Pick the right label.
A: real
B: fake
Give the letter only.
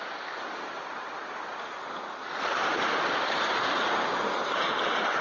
A